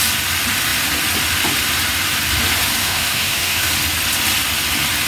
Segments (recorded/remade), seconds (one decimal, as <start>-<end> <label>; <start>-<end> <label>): 0.0-2.8 recorded; 2.8-3.7 remade; 3.7-5.1 recorded